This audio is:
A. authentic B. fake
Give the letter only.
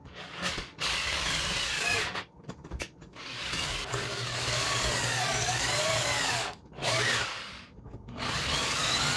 B